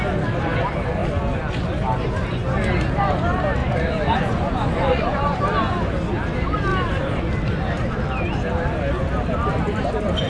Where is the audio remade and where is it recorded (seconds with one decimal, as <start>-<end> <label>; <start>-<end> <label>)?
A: 0.0-3.6 recorded; 3.6-5.4 remade; 5.4-10.3 recorded